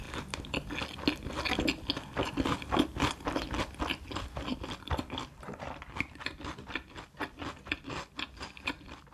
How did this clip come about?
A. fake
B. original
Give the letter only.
B